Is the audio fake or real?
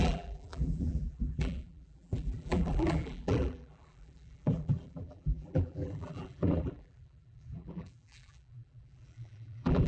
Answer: fake